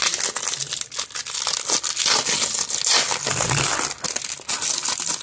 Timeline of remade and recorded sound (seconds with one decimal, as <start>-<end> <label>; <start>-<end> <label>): 0.0-5.2 recorded